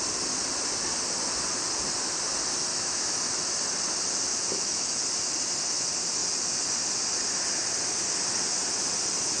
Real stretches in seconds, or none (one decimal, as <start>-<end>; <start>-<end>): 0.0-2.7; 3.4-4.3; 5.0-9.4